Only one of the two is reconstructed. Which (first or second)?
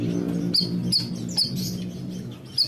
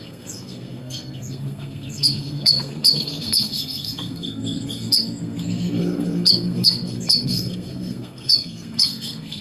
second